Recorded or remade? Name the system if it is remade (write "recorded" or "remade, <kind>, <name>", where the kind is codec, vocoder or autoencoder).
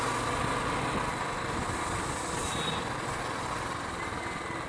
recorded